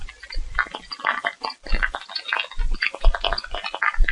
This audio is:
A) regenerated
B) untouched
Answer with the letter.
B